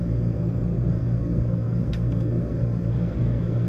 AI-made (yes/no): yes